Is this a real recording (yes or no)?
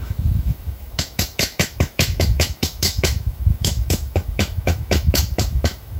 no